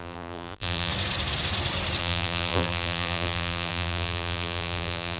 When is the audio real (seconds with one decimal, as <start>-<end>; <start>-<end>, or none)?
0.9-2.0